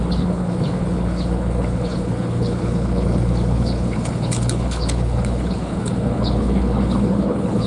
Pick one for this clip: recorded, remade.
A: remade